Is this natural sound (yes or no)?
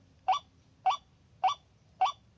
yes